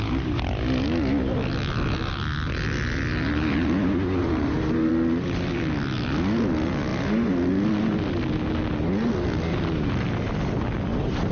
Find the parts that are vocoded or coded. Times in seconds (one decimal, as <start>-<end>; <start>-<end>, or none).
4.2-4.9